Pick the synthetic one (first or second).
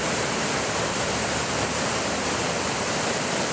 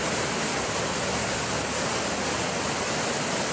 first